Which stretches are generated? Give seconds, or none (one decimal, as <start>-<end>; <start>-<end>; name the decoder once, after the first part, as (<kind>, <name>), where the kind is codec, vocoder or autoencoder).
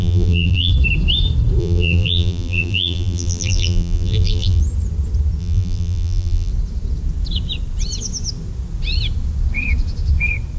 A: 0.0-0.7 (vocoder, BigVGAN v2); 1.6-4.6; 5.4-6.5